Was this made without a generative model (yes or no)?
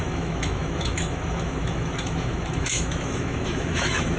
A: no